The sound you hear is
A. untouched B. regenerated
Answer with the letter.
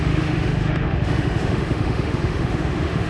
B